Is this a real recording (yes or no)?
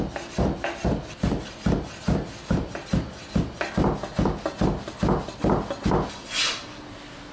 yes